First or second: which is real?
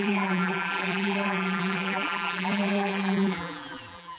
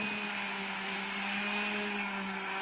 second